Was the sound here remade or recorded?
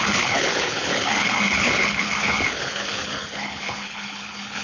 remade